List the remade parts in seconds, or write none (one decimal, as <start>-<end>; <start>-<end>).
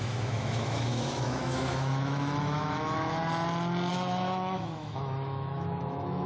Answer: 0.0-3.2; 3.9-6.3